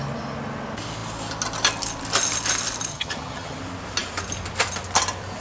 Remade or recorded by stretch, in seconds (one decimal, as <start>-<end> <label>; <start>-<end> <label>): 0.0-2.9 recorded; 2.9-3.6 remade; 3.6-5.4 recorded